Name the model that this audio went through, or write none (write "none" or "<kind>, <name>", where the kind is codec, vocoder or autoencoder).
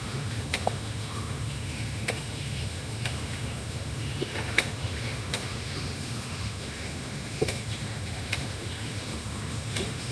autoencoder, DAC-VAE